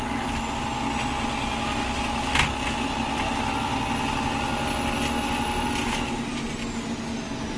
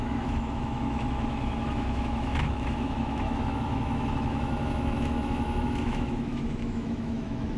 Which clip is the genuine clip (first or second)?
first